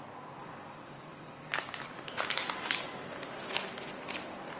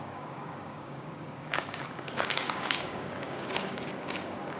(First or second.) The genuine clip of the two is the first